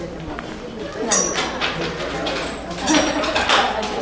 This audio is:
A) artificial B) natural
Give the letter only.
B